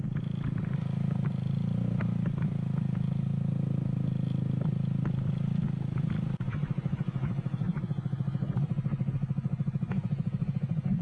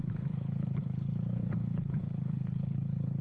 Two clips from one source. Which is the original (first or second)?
first